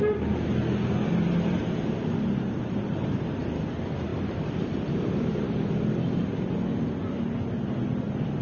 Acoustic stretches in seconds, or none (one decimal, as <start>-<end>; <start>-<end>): 0.0-1.6; 3.4-4.1; 5.8-8.4

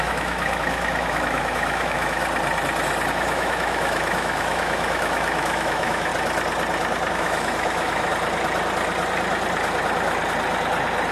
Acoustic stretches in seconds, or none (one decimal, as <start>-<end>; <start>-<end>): 2.2-3.1; 6.1-7.1; 8.1-11.1

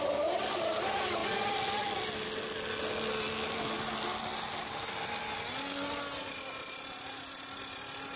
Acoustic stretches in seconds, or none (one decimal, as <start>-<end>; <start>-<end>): 0.0-8.2